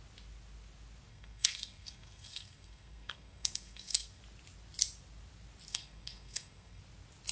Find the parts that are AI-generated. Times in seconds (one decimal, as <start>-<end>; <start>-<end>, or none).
1.1-4.2; 5.7-6.8